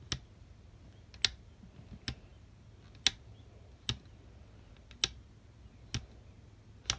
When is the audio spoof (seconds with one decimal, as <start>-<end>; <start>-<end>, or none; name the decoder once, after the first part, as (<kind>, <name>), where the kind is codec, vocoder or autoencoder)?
none